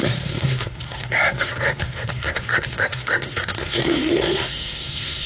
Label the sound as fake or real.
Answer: fake